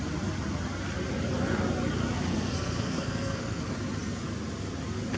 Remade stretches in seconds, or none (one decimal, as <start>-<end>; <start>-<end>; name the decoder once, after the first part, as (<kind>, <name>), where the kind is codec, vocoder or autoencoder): 2.3-3.6 (codec, SNAC)